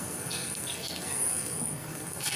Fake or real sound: fake